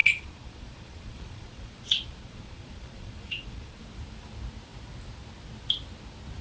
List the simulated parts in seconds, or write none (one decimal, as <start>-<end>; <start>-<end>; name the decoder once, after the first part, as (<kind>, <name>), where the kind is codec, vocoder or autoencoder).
0.0-3.8 (vocoder, Vocos)